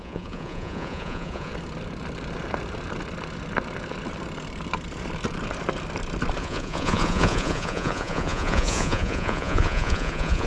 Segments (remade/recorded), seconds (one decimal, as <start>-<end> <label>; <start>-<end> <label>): 0.0-1.5 remade; 1.5-6.4 recorded; 6.4-10.5 remade